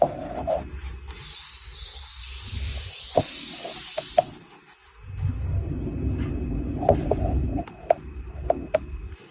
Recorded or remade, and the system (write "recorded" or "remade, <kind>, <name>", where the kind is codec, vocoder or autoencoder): recorded